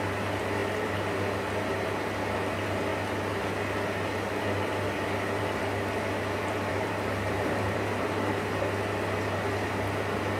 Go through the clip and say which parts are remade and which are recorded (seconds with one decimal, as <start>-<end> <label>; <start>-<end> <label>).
0.0-6.7 recorded; 6.7-8.3 remade; 8.3-10.4 recorded

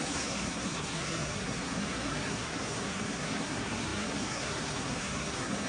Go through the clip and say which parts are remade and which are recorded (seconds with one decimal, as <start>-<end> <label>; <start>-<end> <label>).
0.0-5.7 remade

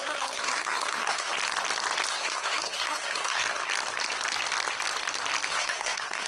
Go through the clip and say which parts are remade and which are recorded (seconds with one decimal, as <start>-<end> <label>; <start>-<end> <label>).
0.0-1.3 remade; 1.3-2.1 recorded; 2.1-3.6 remade; 3.6-5.5 recorded; 5.5-6.3 remade

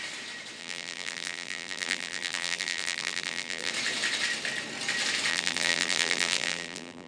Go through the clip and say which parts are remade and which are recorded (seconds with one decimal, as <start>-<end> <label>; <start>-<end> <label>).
0.0-0.6 recorded; 0.6-3.7 remade; 3.7-5.3 recorded; 5.3-7.1 remade